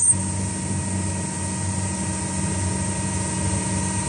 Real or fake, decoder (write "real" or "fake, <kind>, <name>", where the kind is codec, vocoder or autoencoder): real